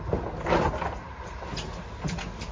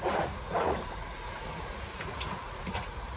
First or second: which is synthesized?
second